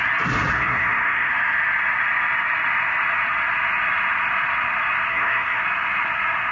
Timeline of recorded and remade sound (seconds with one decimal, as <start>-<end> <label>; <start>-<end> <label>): 0.0-0.5 recorded; 0.5-1.3 remade; 1.3-5.1 recorded; 5.1-5.6 remade; 5.6-6.5 recorded